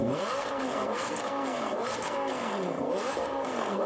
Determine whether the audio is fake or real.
fake